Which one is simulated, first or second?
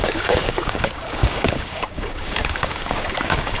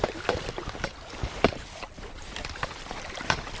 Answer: first